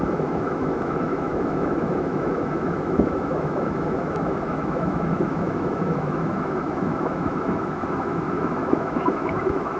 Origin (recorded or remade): remade